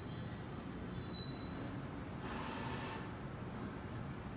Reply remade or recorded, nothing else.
recorded